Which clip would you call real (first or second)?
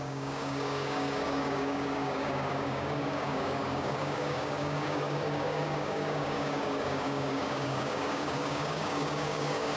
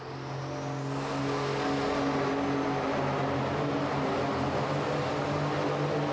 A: second